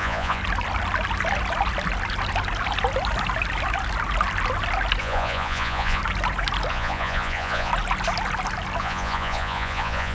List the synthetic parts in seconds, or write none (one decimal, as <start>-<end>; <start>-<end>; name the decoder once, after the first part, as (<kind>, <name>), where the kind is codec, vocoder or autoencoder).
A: 0.0-0.4 (vocoder, Vocos); 5.0-6.0; 6.7-7.7; 8.8-10.1